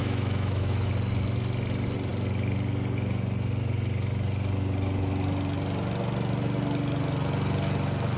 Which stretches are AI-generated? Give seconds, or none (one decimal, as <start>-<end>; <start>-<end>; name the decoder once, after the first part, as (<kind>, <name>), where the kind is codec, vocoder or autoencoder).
0.0-0.9 (autoencoder, DAC-VAE)